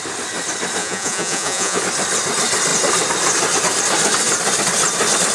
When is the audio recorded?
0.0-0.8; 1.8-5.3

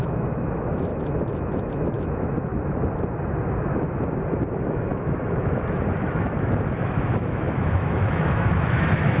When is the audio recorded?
2.5-4.5

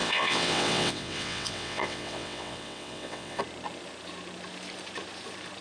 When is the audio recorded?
3.4-5.6

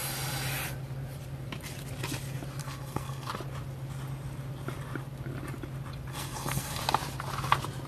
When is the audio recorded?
0.0-2.6; 3.3-6.1; 6.8-7.9